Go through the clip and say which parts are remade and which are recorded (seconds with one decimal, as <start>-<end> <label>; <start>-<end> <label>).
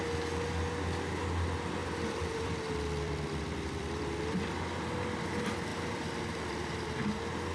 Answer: 0.0-1.8 recorded; 1.8-4.5 remade; 4.5-5.7 recorded; 5.7-6.9 remade; 6.9-7.5 recorded